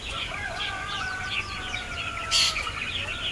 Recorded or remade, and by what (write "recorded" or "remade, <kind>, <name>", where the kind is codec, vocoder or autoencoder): remade, vocoder, Vocos